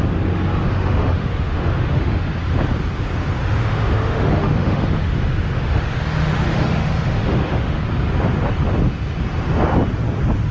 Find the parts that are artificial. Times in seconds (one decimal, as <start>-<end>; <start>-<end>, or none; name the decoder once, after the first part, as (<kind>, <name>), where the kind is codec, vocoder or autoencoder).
0.6-2.3 (autoencoder, DAC-VAE); 3.4-7.8